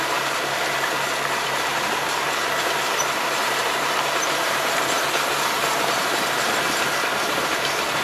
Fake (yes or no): yes